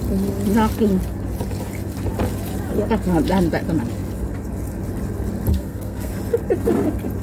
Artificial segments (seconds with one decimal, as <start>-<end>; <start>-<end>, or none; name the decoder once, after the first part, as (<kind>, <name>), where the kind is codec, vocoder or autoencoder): 5.5-6.1 (codec, SNAC)